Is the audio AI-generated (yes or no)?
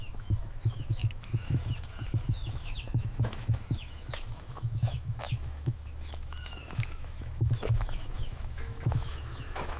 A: yes